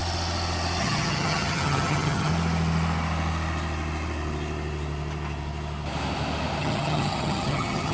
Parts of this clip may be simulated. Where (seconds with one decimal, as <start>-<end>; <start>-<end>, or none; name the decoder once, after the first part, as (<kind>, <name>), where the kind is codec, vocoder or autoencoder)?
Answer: 0.8-2.3 (vocoder, HiFi-GAN); 6.6-7.9